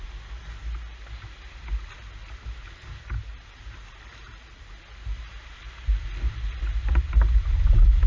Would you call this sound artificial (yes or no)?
no